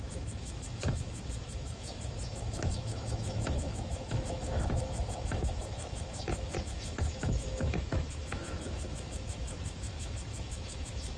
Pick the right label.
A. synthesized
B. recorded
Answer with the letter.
A